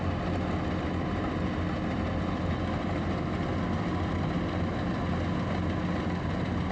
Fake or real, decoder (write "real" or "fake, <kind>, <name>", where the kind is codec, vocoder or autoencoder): real